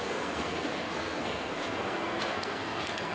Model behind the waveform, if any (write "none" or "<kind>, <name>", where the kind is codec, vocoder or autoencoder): codec, SNAC